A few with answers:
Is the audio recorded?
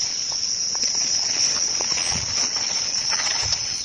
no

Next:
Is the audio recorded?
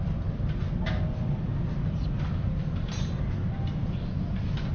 yes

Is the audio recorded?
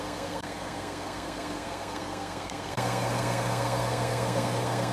no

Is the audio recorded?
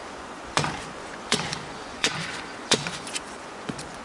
no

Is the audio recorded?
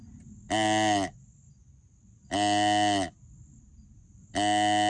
yes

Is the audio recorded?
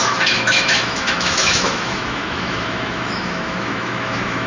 no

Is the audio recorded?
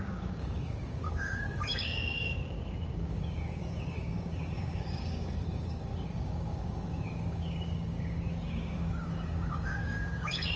no